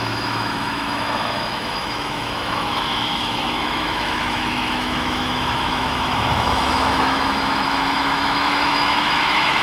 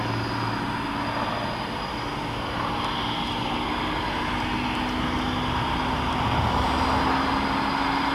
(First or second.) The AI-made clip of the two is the first